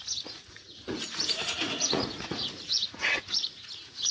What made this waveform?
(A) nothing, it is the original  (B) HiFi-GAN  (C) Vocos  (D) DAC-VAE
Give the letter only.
C